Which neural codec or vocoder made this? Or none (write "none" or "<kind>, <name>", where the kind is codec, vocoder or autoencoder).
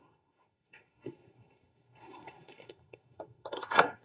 codec, SNAC